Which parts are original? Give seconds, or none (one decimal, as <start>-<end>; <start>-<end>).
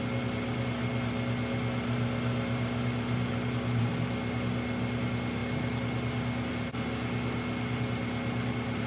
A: 0.0-8.9